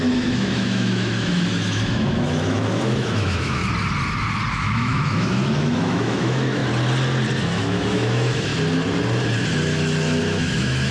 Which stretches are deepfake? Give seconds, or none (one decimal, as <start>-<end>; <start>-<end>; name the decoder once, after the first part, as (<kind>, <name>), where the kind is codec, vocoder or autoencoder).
0.0-3.6 (autoencoder, DAC-VAE); 4.5-6.6; 7.4-8.5; 10.2-10.9